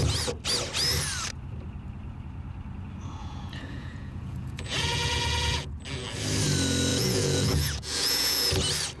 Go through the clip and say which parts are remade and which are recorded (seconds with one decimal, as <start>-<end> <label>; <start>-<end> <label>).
0.0-3.2 recorded; 3.2-5.7 remade; 5.7-6.9 recorded; 6.9-8.5 remade; 8.5-9.0 recorded